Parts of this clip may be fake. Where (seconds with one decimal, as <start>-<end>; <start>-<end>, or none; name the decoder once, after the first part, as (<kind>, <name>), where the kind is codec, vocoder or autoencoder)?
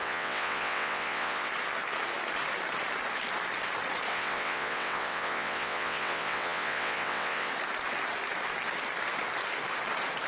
0.0-1.5 (vocoder, WaveNeXt); 4.1-7.5